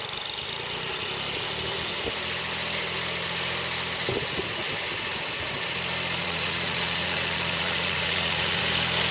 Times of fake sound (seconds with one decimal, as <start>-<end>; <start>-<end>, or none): 6.2-8.6